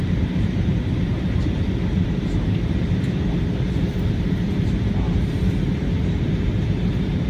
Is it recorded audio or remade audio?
remade